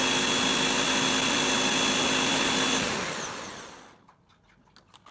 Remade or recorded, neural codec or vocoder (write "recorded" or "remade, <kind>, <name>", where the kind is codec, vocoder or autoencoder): recorded